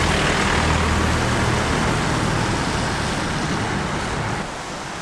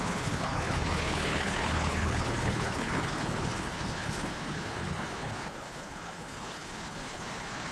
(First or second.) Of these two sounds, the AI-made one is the second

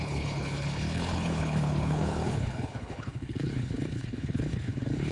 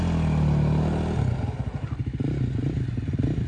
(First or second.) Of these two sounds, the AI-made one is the first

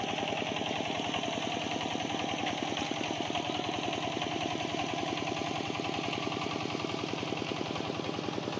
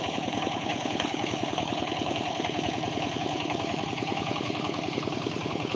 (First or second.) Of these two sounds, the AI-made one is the second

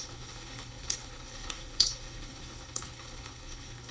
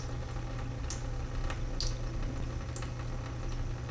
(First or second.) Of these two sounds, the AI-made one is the first